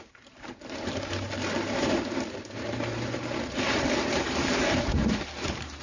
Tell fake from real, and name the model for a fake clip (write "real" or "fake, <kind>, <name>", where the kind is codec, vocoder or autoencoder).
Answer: fake, vocoder, BigVGAN v2